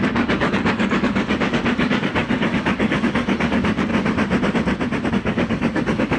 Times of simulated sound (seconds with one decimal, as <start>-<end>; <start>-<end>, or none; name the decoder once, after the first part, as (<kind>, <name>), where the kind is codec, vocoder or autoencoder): 0.0-3.9 (codec, DAC); 5.1-6.2